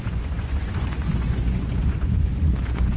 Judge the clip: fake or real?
fake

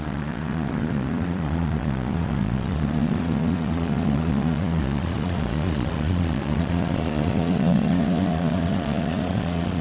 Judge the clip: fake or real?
fake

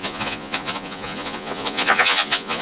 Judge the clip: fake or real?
fake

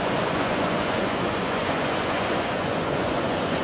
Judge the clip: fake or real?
fake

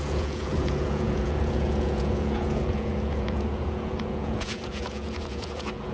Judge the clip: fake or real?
fake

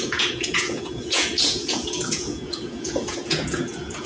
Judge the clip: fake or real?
fake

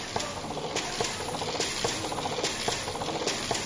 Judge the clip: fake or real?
real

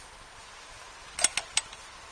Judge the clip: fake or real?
real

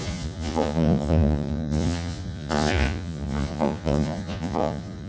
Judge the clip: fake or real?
fake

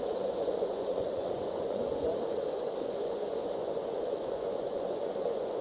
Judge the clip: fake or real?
fake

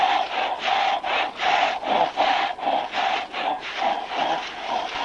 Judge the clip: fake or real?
real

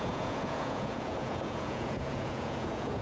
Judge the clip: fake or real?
fake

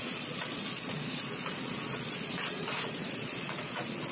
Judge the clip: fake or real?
fake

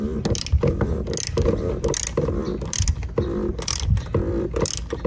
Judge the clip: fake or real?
real